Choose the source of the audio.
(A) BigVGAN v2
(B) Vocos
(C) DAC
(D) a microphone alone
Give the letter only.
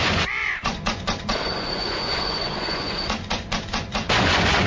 B